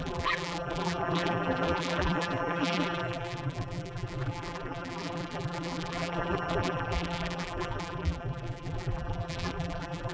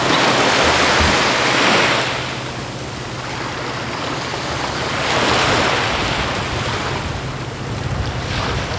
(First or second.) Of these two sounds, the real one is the second